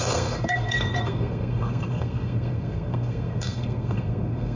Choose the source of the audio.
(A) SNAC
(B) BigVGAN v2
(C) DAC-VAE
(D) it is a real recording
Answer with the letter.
A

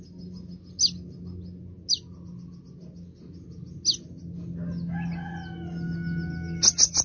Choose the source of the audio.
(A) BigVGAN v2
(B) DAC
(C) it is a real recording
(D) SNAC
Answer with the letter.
C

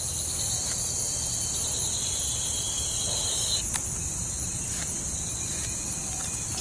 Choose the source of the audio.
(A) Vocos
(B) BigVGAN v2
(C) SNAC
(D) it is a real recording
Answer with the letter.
D